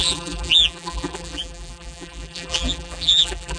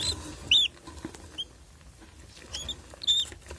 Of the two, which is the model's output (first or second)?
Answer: first